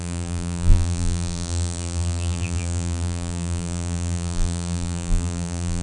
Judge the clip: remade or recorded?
remade